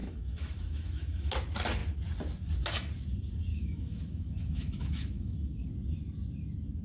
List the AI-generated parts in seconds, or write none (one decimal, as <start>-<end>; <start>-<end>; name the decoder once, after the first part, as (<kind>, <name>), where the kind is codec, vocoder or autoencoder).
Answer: 0.0-1.3 (autoencoder, DAC-VAE); 3.5-5.7